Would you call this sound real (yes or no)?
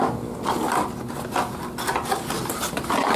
yes